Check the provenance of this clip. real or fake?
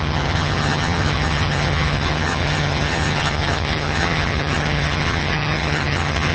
fake